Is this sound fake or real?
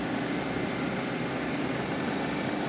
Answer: real